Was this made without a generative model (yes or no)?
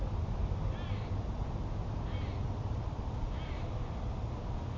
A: yes